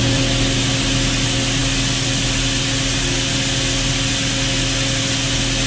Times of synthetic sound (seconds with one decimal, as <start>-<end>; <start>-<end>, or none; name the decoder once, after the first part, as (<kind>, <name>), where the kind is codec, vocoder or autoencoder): none